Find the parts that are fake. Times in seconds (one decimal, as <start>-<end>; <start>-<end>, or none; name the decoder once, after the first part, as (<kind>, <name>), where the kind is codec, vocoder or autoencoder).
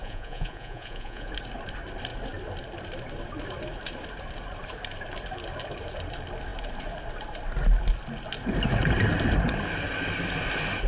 0.0-1.3 (vocoder, Vocos)